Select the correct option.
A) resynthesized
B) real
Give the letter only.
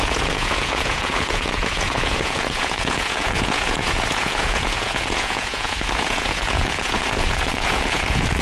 A